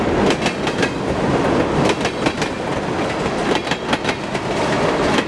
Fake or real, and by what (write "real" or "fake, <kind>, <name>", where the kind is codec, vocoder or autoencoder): real